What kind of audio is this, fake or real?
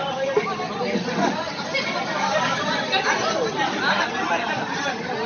real